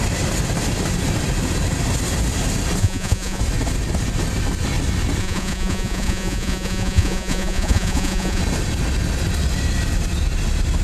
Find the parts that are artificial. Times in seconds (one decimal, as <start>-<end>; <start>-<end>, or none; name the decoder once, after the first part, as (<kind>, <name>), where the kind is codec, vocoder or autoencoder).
2.8-3.4 (vocoder, Vocos); 5.2-8.4